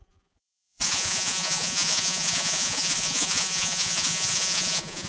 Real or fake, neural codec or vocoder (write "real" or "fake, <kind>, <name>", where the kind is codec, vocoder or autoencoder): fake, vocoder, Vocos